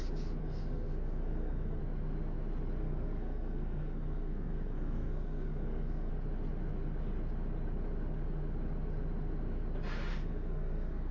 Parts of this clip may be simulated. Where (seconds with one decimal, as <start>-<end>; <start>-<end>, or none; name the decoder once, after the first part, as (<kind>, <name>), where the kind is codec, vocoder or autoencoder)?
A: 0.4-1.8 (codec, SNAC); 2.8-6.1; 10.1-11.1